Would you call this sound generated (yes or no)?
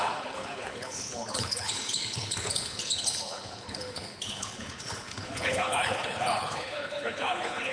yes